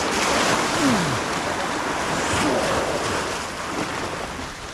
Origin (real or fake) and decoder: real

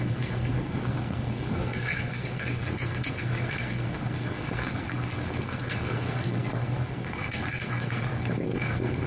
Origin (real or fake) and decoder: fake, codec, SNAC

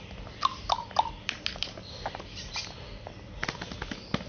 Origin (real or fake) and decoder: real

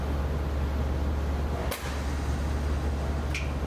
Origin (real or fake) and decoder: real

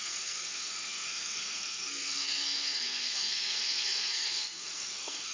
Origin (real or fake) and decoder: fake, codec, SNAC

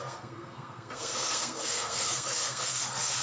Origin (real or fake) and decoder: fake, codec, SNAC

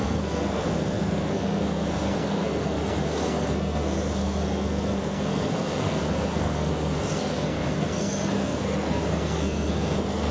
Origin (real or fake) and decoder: fake, codec, SNAC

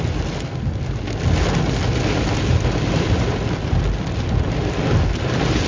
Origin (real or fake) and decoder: real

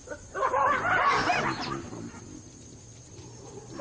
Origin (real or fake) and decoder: real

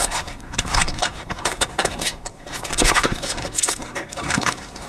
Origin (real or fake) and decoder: fake, codec, SNAC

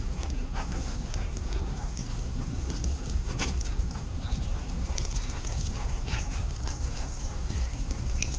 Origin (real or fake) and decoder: fake, codec, SNAC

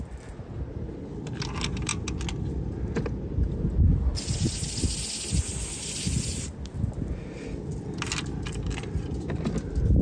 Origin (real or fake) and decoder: real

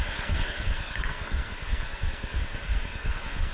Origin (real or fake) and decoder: fake, codec, SNAC